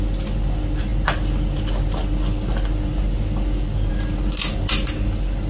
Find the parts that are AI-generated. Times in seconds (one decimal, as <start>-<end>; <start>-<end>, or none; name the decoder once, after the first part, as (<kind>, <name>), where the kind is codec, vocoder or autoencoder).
none